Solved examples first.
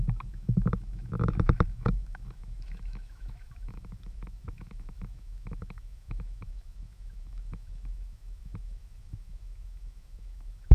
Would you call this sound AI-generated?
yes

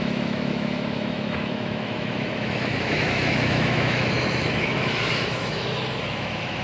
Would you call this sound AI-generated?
yes